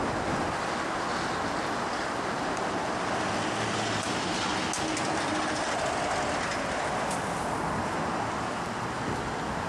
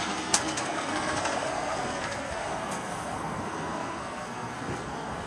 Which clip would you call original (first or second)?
first